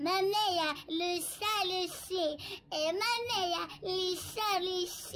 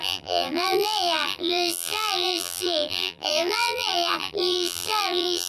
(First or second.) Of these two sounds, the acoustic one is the first